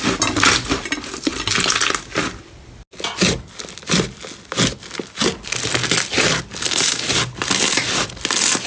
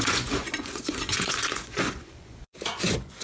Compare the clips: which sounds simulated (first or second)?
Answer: second